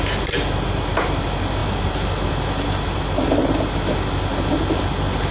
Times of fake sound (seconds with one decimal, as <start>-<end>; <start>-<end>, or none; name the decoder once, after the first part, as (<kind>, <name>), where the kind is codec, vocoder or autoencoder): none